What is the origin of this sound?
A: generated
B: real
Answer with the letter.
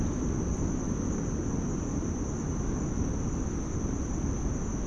B